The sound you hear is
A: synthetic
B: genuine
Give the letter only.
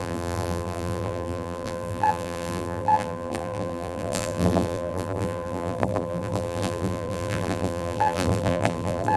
A